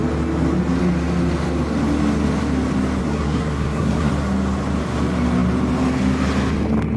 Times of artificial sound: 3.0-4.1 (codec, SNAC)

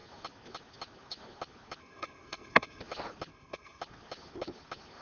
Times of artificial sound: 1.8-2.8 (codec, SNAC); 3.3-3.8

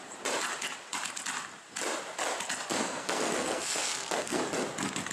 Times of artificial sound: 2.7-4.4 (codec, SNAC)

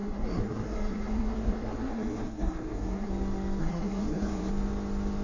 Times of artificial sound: 0.0-3.1 (codec, SNAC); 3.6-4.5

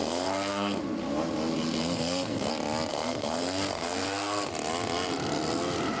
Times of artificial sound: 0.0-0.8 (codec, SNAC); 1.8-2.5; 2.9-4.5

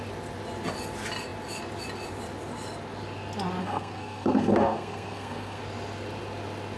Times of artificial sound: 3.6-5.6 (codec, SNAC)

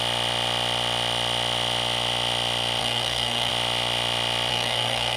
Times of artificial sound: 2.8-3.5 (codec, SNAC); 4.5-5.2